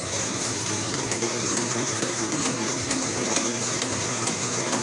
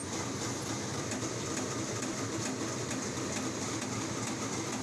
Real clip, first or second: second